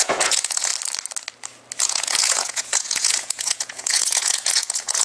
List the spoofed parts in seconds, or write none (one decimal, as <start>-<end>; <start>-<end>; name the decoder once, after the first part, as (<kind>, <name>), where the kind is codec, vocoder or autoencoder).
0.0-0.7 (vocoder, Vocos); 1.8-5.0